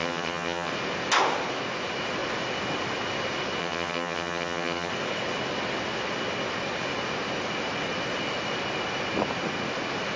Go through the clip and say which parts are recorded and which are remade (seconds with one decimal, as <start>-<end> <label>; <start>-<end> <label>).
0.0-0.7 remade; 0.7-3.6 recorded; 3.6-4.9 remade; 4.9-10.2 recorded